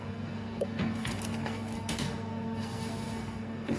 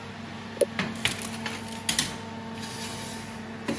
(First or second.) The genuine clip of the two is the second